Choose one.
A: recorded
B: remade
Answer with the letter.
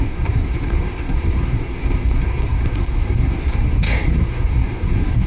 B